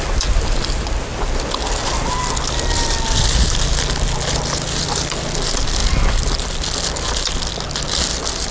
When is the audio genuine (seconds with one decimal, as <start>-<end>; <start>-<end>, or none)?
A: 0.0-8.5